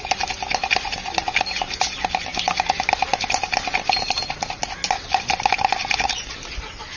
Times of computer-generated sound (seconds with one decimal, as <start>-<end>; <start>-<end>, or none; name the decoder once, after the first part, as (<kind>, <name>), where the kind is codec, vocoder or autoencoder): none